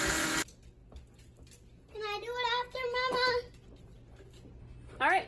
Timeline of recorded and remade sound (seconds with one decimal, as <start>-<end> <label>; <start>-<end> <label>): 0.0-5.3 recorded